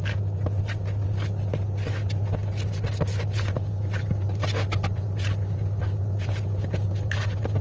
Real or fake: real